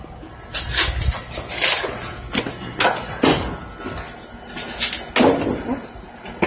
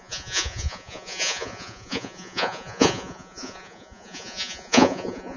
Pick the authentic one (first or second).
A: first